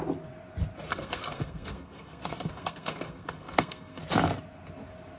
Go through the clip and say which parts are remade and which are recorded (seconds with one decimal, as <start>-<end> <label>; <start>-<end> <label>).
0.0-0.9 recorded; 0.9-4.0 remade; 4.0-5.2 recorded